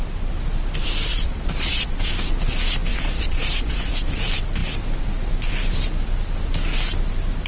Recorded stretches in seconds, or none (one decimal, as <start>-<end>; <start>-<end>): 0.0-1.1; 2.1-2.9; 3.9-7.5